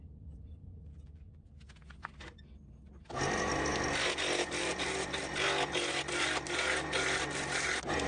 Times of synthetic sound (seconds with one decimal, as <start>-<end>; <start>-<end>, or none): 0.6-1.4